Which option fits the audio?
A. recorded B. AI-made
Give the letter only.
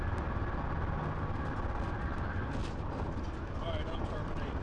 A